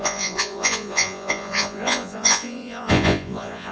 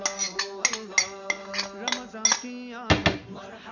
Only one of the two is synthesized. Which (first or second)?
first